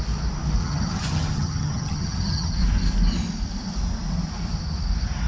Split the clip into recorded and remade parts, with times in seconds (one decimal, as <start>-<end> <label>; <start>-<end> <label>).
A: 0.0-0.6 recorded; 0.6-2.5 remade; 2.5-5.3 recorded